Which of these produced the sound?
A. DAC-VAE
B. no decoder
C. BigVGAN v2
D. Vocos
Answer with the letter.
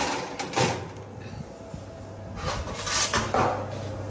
B